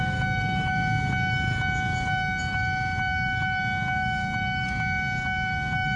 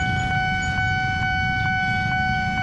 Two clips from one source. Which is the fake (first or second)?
first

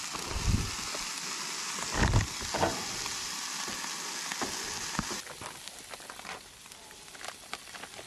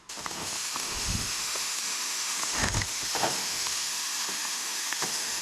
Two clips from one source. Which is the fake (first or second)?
second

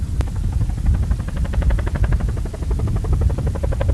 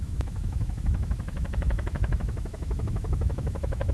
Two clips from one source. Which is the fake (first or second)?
second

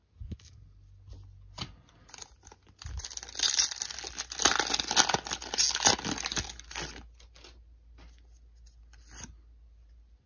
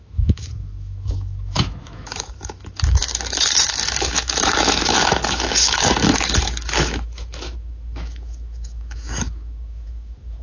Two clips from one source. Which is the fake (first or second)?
second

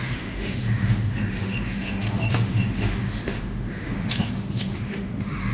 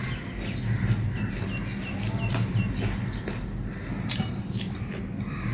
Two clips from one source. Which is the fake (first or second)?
first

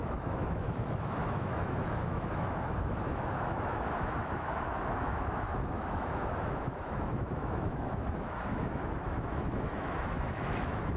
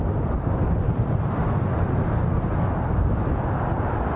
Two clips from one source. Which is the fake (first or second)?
first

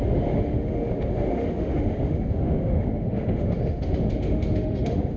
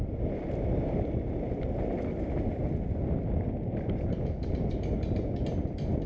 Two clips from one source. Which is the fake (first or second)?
first